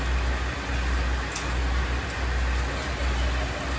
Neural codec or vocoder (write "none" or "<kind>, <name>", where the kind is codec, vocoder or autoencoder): none